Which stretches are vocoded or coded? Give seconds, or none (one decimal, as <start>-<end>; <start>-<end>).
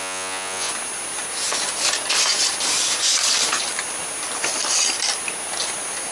0.0-0.7